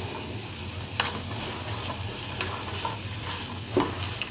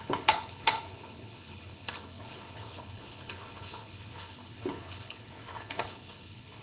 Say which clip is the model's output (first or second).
second